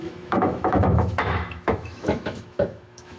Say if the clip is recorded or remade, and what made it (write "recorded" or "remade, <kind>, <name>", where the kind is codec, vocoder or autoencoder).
remade, autoencoder, DAC-VAE